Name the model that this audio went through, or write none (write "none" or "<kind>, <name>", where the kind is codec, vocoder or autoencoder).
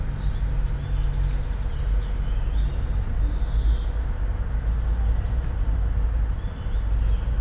none